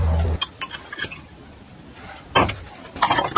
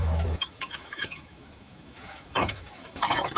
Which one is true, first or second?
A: first